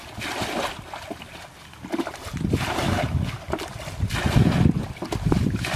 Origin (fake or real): real